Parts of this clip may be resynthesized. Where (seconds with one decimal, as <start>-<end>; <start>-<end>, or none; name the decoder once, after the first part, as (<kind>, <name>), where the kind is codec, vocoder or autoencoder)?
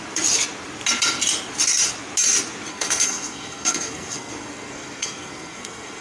2.7-6.0 (codec, SNAC)